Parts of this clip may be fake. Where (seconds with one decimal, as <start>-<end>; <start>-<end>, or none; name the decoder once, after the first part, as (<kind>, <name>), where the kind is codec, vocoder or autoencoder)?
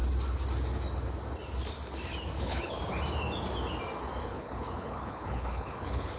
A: 2.4-2.8 (codec, HILCodec); 4.2-6.2